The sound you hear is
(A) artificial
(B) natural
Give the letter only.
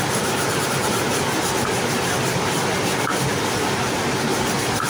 B